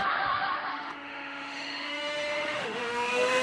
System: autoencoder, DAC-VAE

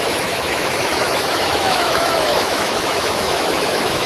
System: autoencoder, DAC-VAE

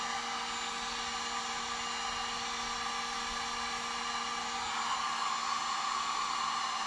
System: none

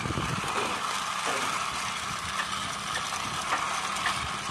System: none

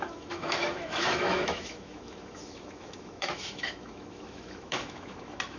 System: autoencoder, DAC-VAE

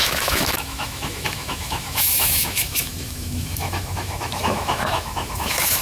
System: autoencoder, DAC-VAE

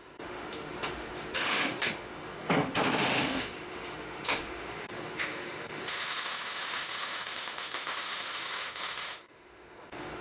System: autoencoder, DAC-VAE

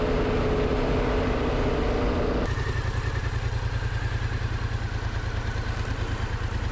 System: none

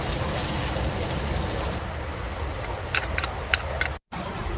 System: none